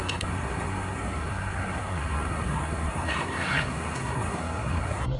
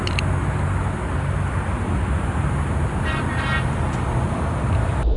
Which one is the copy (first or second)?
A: first